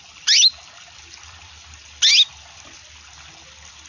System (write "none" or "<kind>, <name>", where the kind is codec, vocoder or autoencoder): none